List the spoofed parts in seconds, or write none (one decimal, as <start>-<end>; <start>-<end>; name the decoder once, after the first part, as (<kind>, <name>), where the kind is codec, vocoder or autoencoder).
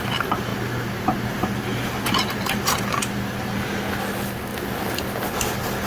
none